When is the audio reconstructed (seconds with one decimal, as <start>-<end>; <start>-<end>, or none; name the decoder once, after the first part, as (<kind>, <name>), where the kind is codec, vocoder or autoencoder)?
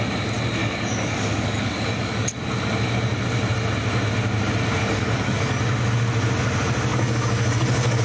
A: 0.6-2.5 (codec, DAC); 4.8-5.6; 6.9-8.0